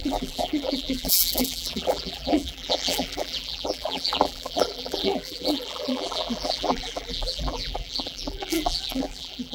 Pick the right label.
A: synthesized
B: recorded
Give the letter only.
A